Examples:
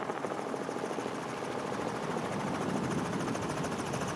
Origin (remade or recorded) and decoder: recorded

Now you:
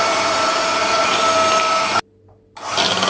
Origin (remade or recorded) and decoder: recorded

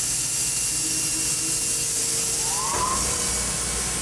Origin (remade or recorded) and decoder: recorded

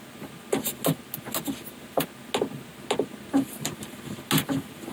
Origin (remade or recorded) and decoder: recorded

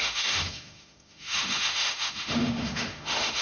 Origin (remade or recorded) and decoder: remade, autoencoder, DAC-VAE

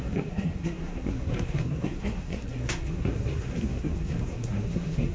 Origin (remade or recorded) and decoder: remade, codec, SNAC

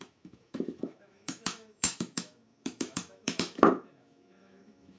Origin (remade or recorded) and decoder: remade, autoencoder, DAC-VAE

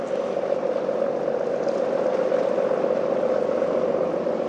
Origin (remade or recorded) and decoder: recorded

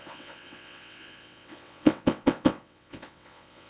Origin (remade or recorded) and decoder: remade, vocoder, WaveNeXt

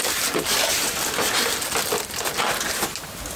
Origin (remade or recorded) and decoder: recorded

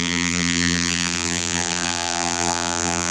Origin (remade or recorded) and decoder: remade, vocoder, BigVGAN v2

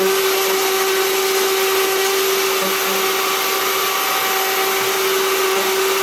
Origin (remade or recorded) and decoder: recorded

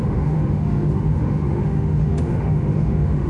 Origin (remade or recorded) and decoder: remade, autoencoder, DAC-VAE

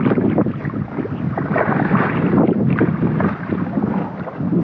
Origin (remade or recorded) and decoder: recorded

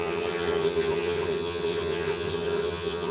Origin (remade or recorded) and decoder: remade, vocoder, HiFi-GAN